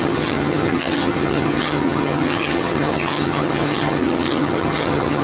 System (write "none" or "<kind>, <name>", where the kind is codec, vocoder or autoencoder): vocoder, HiFi-GAN